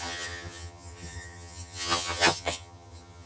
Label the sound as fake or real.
fake